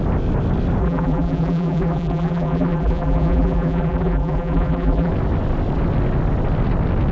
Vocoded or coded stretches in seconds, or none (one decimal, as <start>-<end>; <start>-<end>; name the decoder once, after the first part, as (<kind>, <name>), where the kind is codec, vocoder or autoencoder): 0.8-5.1 (vocoder, BigVGAN v2)